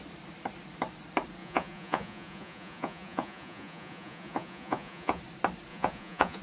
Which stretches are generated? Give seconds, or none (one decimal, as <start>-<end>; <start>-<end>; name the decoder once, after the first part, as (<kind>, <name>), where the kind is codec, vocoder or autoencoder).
1.4-5.2 (vocoder, Vocos); 5.7-6.4